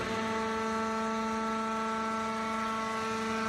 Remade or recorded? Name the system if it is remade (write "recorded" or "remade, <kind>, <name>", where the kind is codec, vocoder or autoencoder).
recorded